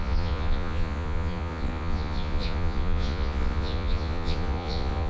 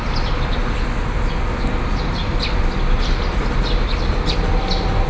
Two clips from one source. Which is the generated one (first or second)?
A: first